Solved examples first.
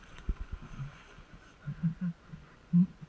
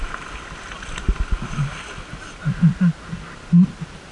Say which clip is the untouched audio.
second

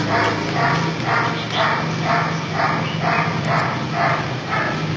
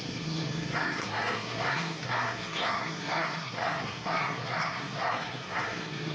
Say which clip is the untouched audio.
first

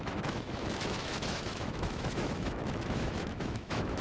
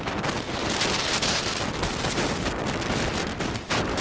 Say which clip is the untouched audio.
second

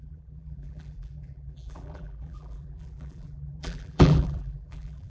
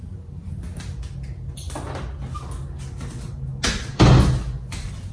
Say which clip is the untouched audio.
second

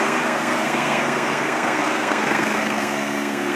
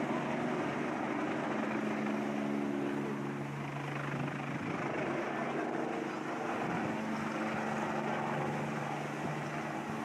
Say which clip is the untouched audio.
second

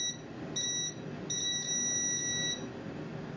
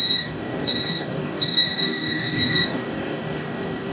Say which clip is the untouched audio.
first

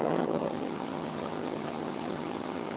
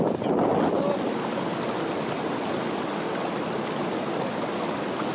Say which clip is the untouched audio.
second